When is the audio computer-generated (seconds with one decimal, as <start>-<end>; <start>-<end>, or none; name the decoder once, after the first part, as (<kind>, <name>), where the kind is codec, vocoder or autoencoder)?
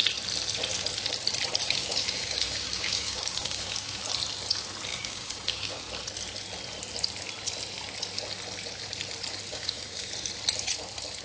1.6-4.0 (codec, DAC); 4.9-5.8; 9.5-10.1